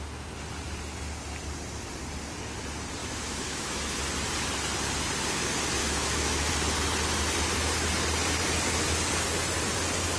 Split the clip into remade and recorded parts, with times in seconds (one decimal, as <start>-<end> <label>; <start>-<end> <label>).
0.0-3.0 recorded; 3.0-4.0 remade; 4.0-5.8 recorded; 5.8-6.5 remade; 6.5-10.2 recorded

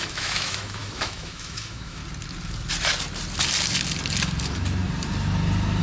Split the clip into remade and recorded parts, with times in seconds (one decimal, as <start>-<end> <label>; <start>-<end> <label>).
0.0-2.0 remade; 2.0-5.8 recorded

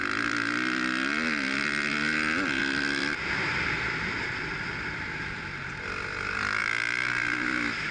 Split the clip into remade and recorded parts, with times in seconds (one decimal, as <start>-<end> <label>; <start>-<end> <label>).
0.0-2.6 recorded; 2.6-5.7 remade; 5.7-7.9 recorded

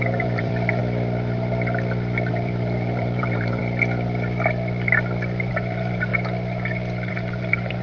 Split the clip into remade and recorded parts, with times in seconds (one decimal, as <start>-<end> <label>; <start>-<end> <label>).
0.0-0.8 remade; 0.8-2.3 recorded; 2.3-3.6 remade; 3.6-5.5 recorded; 5.5-6.1 remade; 6.1-7.1 recorded; 7.1-7.8 remade

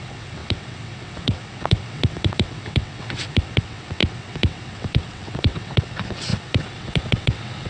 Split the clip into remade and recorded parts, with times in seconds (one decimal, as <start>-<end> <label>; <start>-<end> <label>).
0.0-7.7 remade

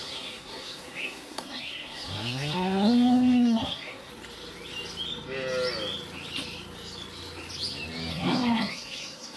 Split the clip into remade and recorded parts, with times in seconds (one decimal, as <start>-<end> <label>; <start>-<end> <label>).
0.0-4.1 remade; 4.1-8.1 recorded; 8.1-9.4 remade

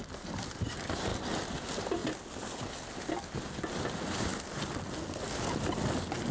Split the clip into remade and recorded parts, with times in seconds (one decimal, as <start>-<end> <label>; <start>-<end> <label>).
0.0-1.1 remade; 1.1-1.6 recorded; 1.6-2.0 remade; 2.0-3.1 recorded; 3.1-4.3 remade; 4.3-6.3 recorded

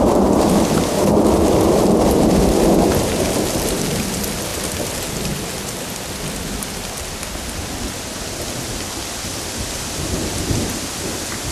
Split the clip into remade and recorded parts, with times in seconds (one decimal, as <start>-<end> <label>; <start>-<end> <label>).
0.0-11.5 recorded